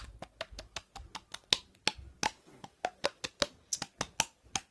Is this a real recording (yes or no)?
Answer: yes